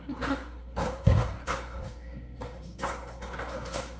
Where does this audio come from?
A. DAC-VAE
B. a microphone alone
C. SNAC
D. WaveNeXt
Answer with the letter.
C